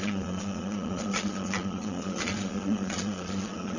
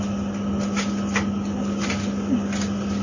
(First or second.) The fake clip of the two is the first